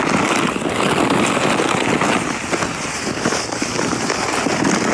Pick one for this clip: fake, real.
real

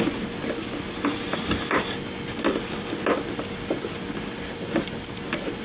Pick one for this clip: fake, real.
real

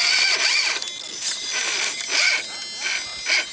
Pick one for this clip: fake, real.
real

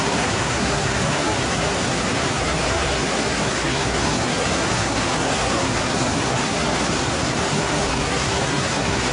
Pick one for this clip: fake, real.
fake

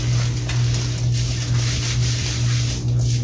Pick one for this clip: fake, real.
real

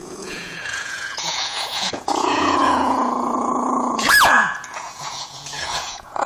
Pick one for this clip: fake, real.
fake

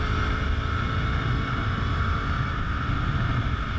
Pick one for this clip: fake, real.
real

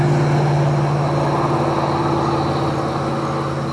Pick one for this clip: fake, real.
real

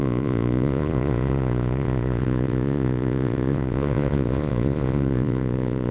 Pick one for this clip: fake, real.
fake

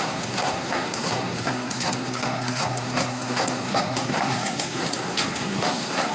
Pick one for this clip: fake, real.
fake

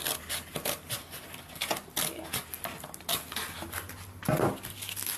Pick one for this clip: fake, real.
real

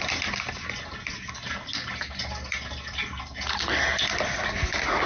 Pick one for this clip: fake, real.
real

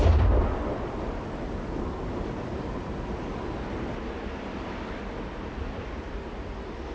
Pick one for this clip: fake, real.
real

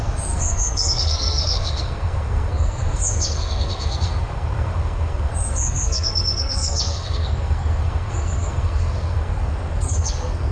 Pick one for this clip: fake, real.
fake